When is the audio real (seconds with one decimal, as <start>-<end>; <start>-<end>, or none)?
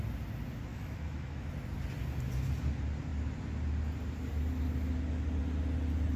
0.0-0.7; 1.5-6.2